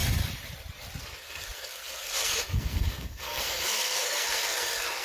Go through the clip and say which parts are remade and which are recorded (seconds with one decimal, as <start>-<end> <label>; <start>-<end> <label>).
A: 0.0-1.0 recorded; 1.0-5.0 remade